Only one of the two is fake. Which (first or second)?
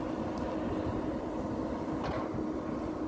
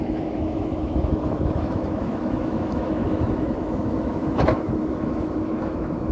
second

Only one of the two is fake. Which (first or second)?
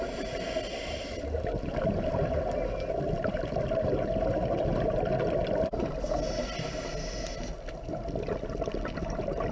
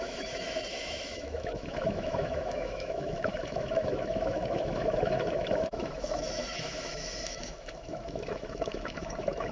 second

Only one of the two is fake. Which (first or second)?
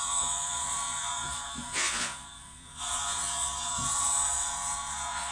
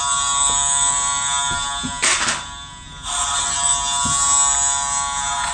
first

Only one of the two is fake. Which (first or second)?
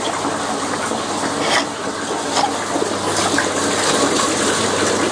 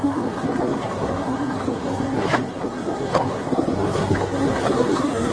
second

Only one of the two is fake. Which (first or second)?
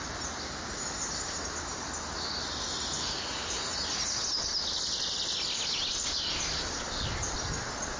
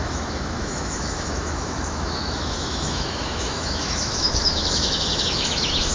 second